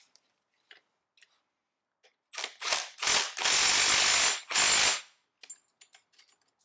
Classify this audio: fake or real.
real